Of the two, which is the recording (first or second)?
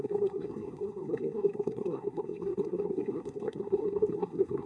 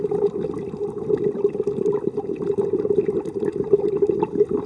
second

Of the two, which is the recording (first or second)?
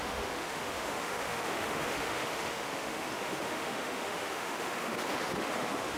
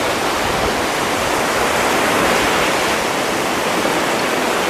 second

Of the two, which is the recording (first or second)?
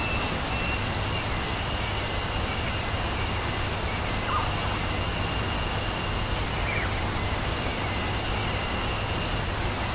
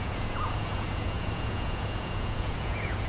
first